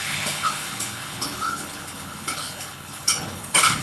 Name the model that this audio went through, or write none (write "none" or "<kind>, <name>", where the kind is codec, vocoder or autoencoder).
codec, HILCodec